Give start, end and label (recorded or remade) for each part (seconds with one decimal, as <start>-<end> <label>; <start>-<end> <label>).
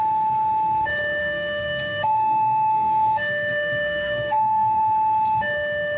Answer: 0.0-1.2 recorded; 1.2-4.8 remade; 4.8-6.0 recorded